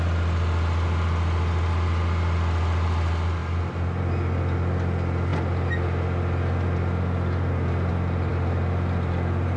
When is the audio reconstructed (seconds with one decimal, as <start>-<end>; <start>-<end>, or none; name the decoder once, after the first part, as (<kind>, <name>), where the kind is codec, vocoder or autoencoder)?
none